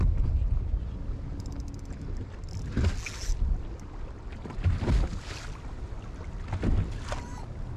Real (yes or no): yes